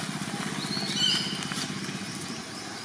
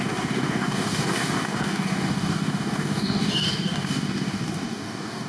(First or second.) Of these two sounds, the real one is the first